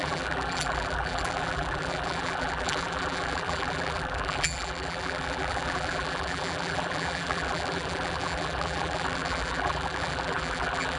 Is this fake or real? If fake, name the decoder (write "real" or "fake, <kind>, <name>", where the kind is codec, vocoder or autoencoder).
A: fake, vocoder, BigVGAN v2